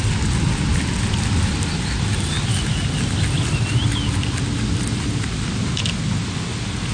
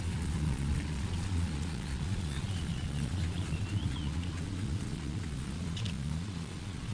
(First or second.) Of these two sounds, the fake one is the second